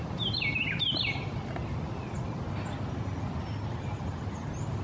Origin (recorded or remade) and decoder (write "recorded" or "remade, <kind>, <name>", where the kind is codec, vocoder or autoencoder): recorded